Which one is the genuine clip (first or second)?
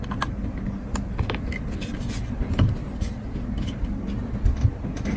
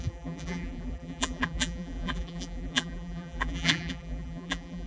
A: first